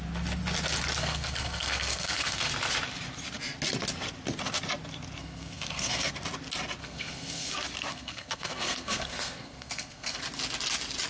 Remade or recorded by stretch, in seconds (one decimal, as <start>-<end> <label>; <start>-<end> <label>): 0.0-1.0 recorded; 1.0-2.5 remade; 2.5-5.2 recorded; 5.2-6.1 remade; 6.1-6.8 recorded; 6.8-7.5 remade; 7.5-7.9 recorded; 7.9-10.2 remade; 10.2-11.1 recorded